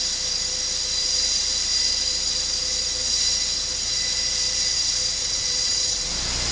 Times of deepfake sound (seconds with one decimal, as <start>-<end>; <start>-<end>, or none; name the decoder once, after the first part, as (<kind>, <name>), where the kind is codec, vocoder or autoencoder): 5.2-6.1 (vocoder, WaveNeXt)